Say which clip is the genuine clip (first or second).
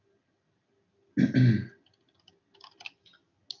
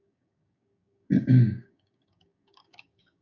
first